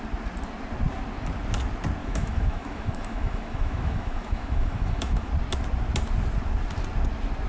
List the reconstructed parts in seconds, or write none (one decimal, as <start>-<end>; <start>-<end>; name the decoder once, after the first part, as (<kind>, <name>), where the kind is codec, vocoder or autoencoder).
2.0-5.3 (autoencoder, DAC-VAE)